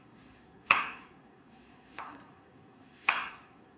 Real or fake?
fake